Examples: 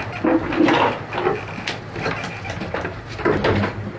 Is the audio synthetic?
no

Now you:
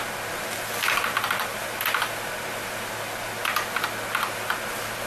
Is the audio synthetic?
no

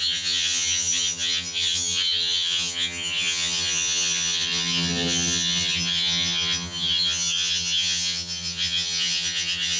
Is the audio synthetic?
yes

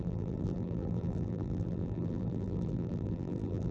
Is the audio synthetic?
yes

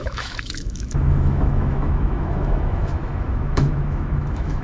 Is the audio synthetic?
yes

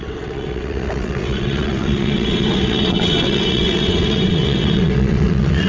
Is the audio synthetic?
yes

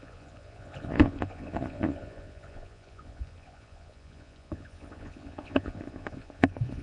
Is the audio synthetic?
yes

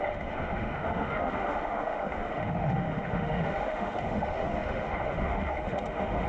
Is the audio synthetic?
yes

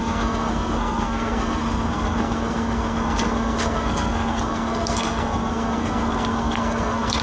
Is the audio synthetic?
yes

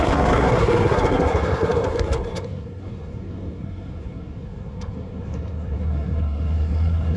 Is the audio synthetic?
yes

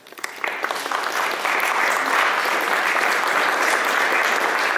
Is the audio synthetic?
no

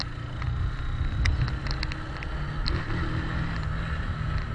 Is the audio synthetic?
no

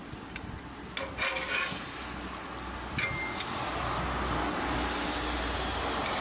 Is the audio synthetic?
no